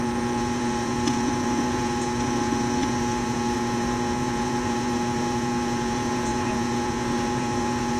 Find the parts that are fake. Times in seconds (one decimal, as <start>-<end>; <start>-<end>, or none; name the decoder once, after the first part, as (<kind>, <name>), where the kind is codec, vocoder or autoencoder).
0.0-8.0 (vocoder, Vocos)